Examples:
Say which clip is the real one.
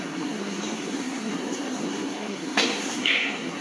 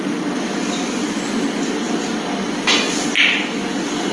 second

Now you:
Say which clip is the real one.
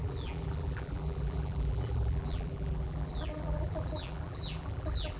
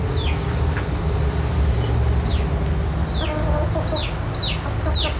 second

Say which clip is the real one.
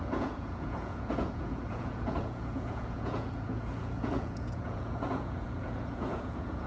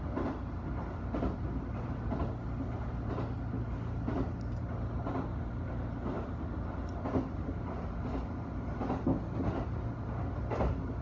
second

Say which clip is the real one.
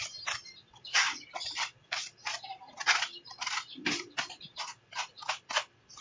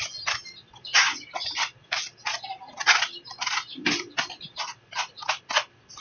second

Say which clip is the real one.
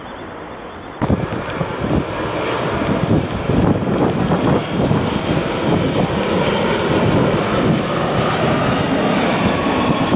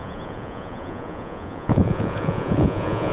first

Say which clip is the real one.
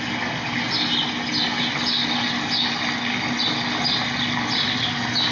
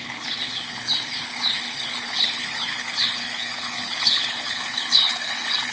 first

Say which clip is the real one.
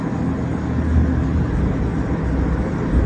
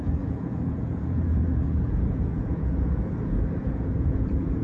first